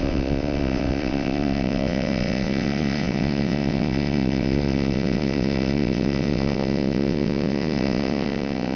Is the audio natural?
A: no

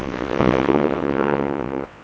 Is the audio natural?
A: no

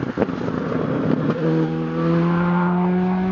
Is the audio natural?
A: yes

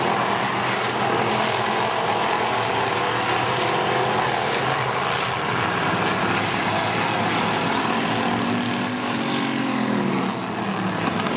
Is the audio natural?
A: yes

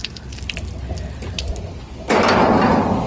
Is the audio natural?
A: yes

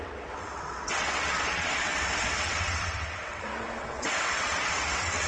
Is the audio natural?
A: no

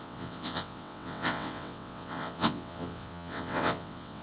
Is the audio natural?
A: no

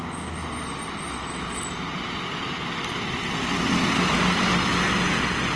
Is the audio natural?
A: yes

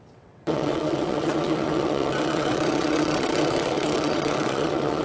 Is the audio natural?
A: no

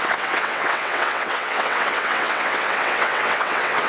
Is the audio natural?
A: no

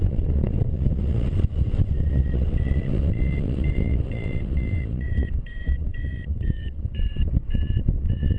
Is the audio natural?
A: no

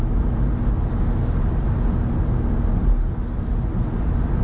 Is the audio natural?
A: yes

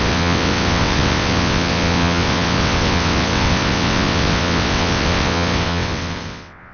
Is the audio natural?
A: no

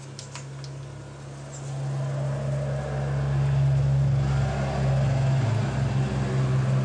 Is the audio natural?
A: yes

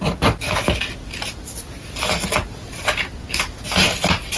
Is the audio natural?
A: yes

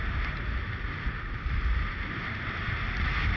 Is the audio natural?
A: yes